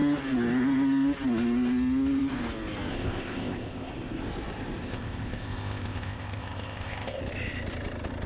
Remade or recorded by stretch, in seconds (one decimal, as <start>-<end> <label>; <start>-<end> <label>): 0.0-2.9 recorded; 2.9-3.9 remade; 3.9-4.8 recorded; 4.8-7.2 remade; 7.2-8.3 recorded